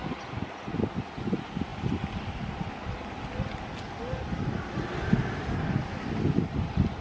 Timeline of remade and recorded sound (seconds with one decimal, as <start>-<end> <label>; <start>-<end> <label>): 0.0-7.0 recorded